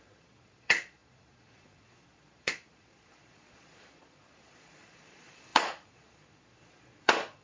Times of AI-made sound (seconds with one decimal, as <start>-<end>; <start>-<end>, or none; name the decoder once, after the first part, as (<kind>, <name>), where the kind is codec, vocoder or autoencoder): 0.0-7.4 (vocoder, Vocos)